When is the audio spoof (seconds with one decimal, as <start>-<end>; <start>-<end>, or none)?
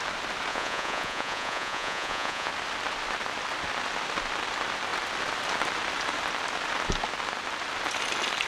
0.5-2.5